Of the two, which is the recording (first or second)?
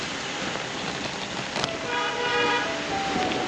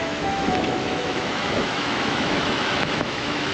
first